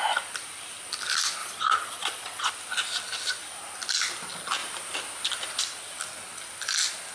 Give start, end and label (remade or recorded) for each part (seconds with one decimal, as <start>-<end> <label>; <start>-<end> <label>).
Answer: 0.0-1.4 recorded; 1.4-2.5 remade; 2.5-7.1 recorded